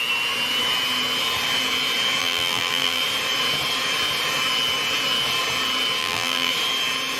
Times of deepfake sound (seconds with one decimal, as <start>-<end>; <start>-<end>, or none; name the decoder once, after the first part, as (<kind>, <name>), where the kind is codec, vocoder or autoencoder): 2.2-3.0 (vocoder, BigVGAN v2); 6.0-6.5